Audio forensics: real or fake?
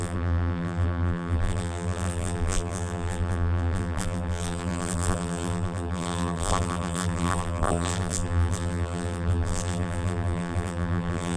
fake